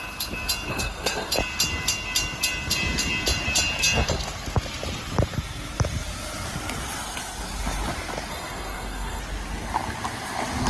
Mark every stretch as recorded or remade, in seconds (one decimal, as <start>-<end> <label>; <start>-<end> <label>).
0.0-0.7 recorded; 0.7-1.3 remade; 1.3-8.3 recorded; 8.3-9.2 remade; 9.2-10.7 recorded